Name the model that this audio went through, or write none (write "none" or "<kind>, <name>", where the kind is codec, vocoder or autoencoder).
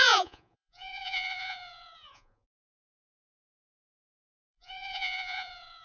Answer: vocoder, Vocos